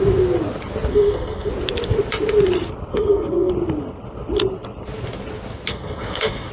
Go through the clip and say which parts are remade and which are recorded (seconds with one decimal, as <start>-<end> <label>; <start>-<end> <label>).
0.0-0.9 recorded; 0.9-1.5 remade; 1.5-2.9 recorded; 2.9-3.5 remade; 3.5-5.7 recorded; 5.7-6.5 remade